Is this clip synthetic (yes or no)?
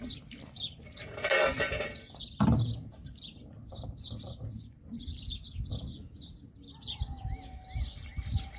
no